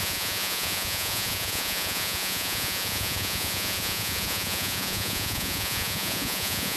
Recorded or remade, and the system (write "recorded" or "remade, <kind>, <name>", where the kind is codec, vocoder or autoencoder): remade, vocoder, Vocos